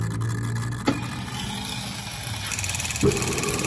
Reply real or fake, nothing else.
real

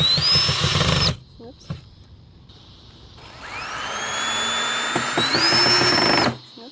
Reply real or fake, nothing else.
real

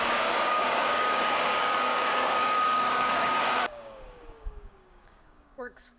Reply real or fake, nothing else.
fake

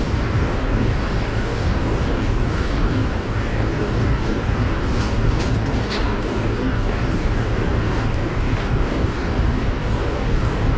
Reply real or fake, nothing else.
fake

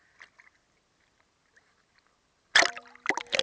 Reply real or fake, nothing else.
real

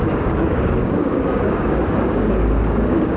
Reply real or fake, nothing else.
fake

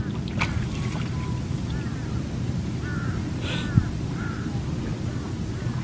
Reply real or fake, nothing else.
real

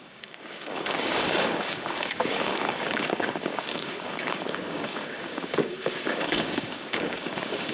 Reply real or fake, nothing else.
fake